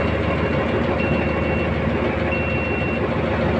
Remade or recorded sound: recorded